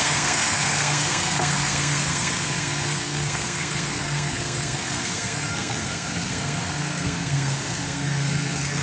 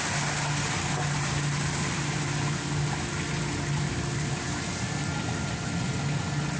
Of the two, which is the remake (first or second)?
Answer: first